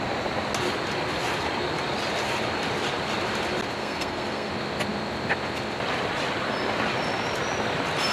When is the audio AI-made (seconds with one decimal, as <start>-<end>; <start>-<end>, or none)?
3.8-4.5